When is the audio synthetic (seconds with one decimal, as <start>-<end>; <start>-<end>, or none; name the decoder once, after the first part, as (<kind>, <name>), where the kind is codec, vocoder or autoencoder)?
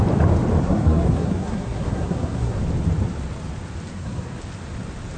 0.6-2.6 (codec, SNAC); 3.9-4.4